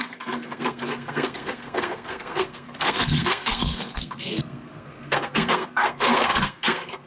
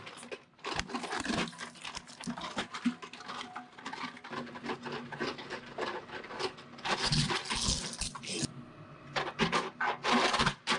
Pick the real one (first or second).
second